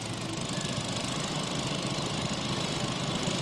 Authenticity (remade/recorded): recorded